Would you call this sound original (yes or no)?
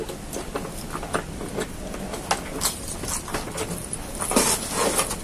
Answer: yes